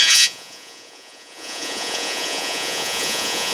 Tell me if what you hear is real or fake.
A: fake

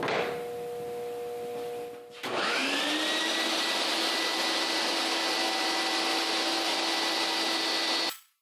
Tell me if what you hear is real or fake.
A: real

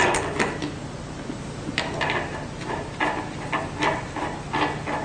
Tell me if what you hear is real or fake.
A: real